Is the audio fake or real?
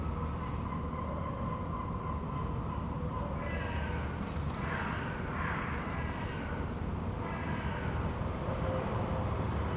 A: fake